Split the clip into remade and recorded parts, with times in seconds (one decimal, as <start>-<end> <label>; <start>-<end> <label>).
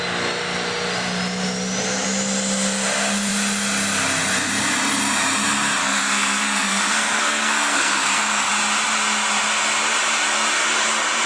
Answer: 0.0-5.8 recorded; 5.8-8.5 remade; 8.5-11.3 recorded